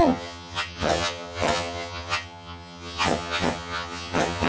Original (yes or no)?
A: no